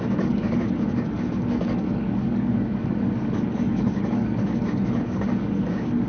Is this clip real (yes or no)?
no